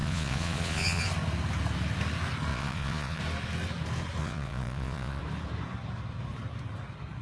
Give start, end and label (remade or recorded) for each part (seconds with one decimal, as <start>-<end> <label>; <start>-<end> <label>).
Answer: 0.0-1.0 remade; 1.0-2.5 recorded; 2.5-3.2 remade; 3.2-4.2 recorded; 4.2-5.2 remade; 5.2-7.2 recorded